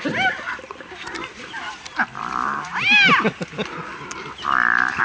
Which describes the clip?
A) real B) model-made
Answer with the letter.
A